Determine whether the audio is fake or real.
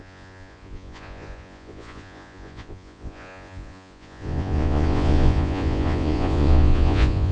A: fake